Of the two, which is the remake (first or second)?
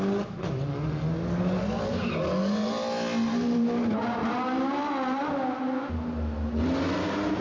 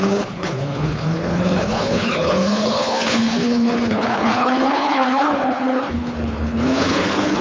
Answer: second